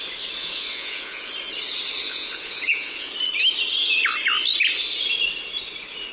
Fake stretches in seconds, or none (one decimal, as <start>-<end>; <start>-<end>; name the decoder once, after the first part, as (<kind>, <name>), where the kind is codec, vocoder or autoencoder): 0.4-1.3 (vocoder, Vocos); 2.0-3.1

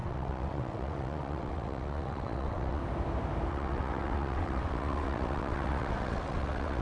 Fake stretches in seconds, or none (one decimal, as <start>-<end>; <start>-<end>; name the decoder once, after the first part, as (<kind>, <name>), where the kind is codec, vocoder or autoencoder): 0.0-2.8 (vocoder, WaveNeXt); 3.5-6.8